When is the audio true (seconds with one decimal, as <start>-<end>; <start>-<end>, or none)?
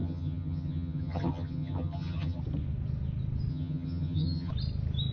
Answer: 2.4-3.5; 4.5-5.1